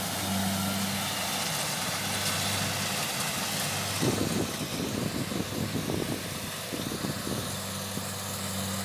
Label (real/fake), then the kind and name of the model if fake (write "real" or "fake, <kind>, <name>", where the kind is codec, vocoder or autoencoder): real